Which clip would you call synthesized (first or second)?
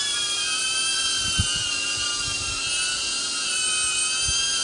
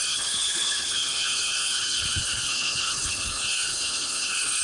second